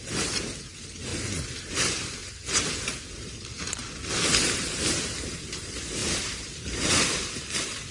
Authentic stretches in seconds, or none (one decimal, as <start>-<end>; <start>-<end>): 1.1-1.7; 2.2-3.1; 3.8-5.4

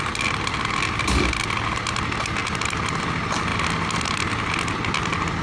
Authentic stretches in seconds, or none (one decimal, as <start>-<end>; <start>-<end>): 0.0-2.4; 3.1-5.4

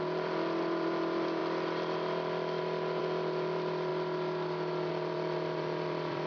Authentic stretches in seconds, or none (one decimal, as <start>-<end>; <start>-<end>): 3.9-4.9

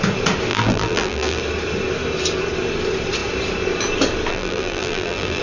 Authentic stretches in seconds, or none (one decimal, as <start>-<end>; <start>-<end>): 0.0-0.5; 1.4-4.3

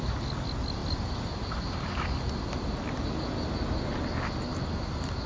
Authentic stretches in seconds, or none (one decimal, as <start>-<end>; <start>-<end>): 0.0-0.8; 2.3-4.5

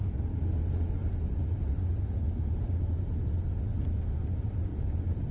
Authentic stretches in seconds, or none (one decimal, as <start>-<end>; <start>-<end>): 0.0-5.3

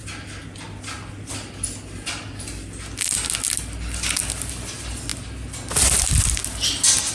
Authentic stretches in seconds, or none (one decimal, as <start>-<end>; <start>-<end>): 0.0-7.1